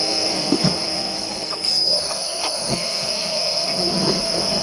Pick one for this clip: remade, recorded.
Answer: remade